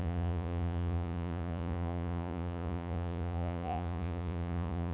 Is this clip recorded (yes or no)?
no